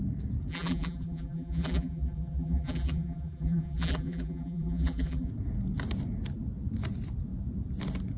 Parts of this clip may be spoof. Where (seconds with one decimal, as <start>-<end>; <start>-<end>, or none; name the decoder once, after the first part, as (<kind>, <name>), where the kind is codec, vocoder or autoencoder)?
0.5-5.3 (vocoder, BigVGAN v2)